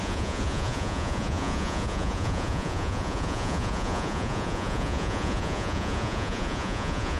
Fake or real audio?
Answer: fake